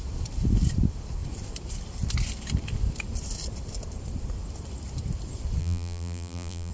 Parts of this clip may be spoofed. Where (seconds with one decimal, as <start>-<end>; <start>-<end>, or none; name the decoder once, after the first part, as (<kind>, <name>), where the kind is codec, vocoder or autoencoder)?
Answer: 5.6-6.7 (vocoder, BigVGAN v2)